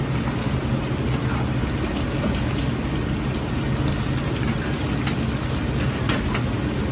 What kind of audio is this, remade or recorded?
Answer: recorded